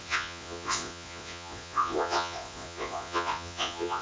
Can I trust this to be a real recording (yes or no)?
no